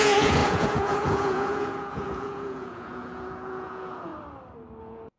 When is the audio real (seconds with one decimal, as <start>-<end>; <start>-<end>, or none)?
4.1-4.8